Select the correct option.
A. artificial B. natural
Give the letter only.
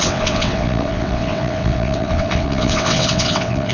A